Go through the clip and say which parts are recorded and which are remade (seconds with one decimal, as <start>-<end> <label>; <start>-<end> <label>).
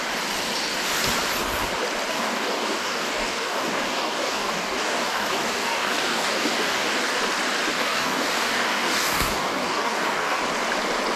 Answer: 0.0-2.1 recorded; 2.1-7.2 remade; 7.2-7.7 recorded; 7.7-10.4 remade; 10.4-11.2 recorded